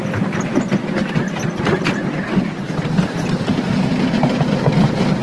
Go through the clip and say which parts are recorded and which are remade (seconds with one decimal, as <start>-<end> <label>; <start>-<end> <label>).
0.0-5.2 recorded